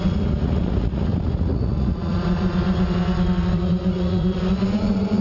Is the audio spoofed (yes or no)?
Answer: yes